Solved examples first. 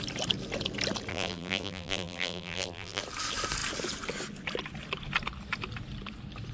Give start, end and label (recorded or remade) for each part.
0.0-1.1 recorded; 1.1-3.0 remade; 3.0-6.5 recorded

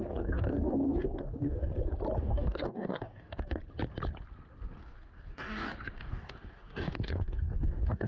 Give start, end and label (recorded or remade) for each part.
0.0-1.7 remade; 1.7-2.2 recorded; 2.2-3.6 remade; 3.6-4.8 recorded; 4.8-8.1 remade